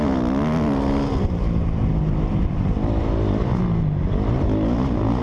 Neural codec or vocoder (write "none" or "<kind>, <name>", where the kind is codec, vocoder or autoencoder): none